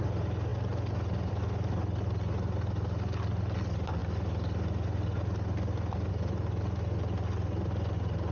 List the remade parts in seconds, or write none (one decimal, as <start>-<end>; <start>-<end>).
none